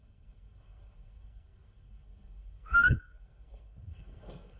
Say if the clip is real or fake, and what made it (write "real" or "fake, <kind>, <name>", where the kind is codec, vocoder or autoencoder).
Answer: fake, codec, SNAC